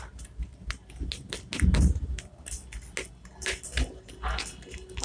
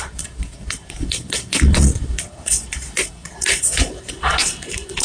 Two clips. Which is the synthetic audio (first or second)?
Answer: second